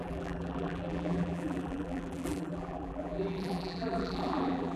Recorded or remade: remade